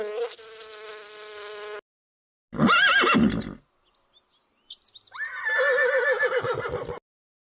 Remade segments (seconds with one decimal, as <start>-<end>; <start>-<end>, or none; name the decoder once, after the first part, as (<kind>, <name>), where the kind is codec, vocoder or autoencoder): none